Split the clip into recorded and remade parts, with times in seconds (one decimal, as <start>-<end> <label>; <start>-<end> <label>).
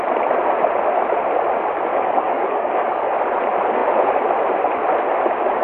0.0-1.9 recorded; 1.9-3.2 remade; 3.2-5.6 recorded